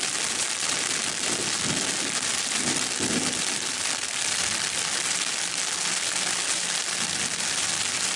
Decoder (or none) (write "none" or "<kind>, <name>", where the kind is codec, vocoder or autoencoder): vocoder, BigVGAN v2